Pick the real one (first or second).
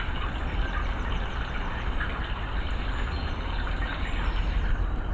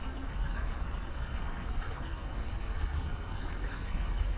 first